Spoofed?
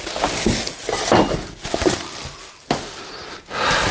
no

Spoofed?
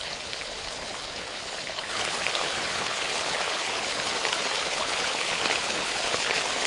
yes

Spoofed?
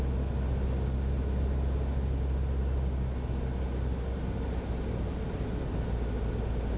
no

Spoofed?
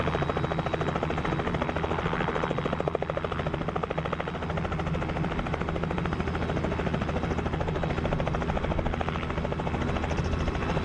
no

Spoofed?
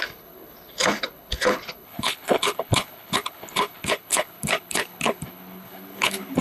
yes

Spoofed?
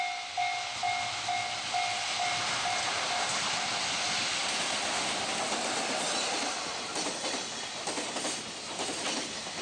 no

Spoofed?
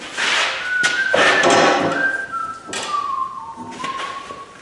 no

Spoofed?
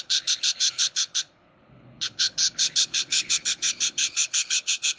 yes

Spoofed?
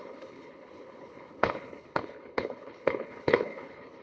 yes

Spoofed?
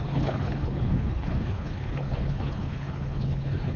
yes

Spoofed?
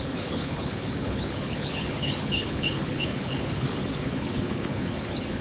yes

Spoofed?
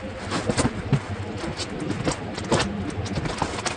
no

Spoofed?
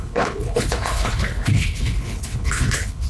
yes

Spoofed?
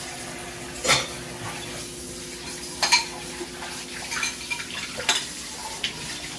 no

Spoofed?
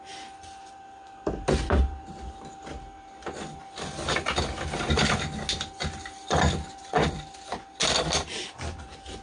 no